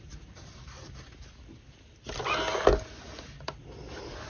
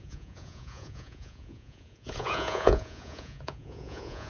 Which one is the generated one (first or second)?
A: second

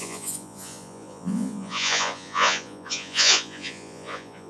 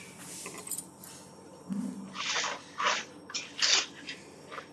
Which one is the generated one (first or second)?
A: first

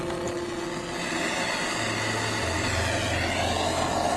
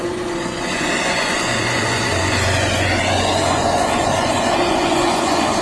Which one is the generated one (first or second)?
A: second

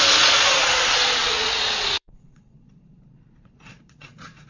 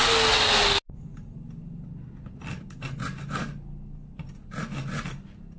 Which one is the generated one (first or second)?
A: first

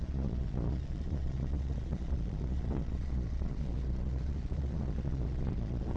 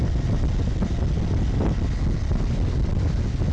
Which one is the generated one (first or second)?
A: first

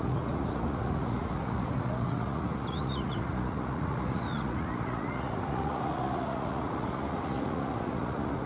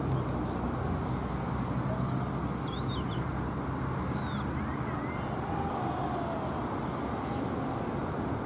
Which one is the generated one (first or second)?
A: first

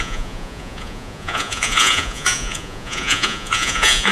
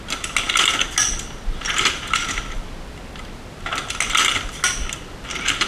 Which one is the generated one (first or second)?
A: first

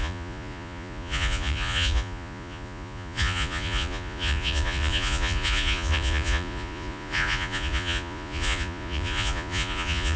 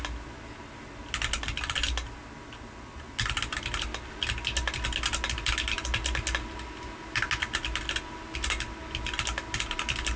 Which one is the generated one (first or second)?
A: first